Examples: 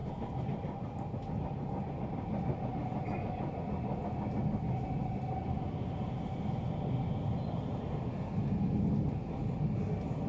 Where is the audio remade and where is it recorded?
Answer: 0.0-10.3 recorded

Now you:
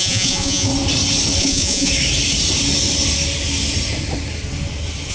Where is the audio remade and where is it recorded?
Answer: 0.0-0.7 remade; 0.7-1.4 recorded; 1.4-1.9 remade; 1.9-5.1 recorded